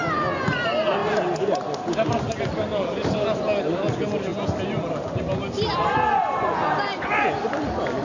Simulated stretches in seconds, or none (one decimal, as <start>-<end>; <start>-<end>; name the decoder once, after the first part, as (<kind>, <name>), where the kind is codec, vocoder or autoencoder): none